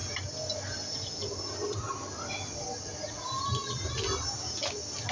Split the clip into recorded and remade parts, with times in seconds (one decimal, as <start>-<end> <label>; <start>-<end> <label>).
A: 0.0-5.1 recorded